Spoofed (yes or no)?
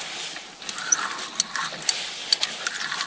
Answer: no